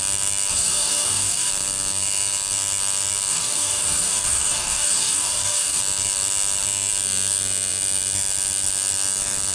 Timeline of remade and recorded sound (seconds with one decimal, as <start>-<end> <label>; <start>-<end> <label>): 0.0-0.5 recorded; 0.5-1.5 remade; 1.5-3.3 recorded; 3.3-5.8 remade; 5.8-9.5 recorded